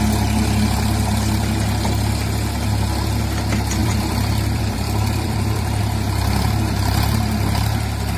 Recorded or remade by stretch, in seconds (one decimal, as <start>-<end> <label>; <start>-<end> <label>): 0.0-3.8 recorded; 3.8-5.8 remade; 5.8-8.2 recorded